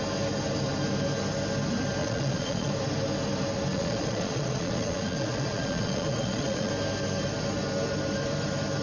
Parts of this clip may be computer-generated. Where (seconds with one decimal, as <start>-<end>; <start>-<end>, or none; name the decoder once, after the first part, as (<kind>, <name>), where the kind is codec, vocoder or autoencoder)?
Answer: 2.0-2.7 (vocoder, Vocos); 3.7-6.7